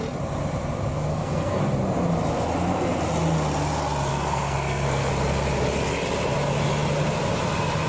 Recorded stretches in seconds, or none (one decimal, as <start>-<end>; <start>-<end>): 0.0-1.1; 1.6-4.1; 5.1-7.9